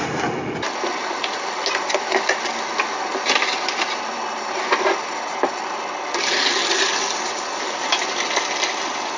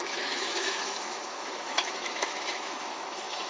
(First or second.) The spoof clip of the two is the second